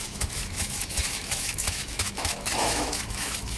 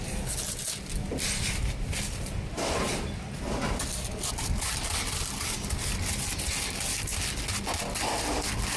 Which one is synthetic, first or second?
first